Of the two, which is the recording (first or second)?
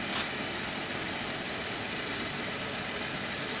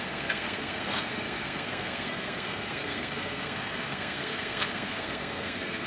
first